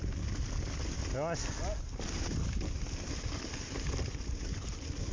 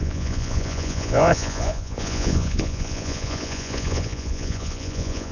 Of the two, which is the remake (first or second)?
second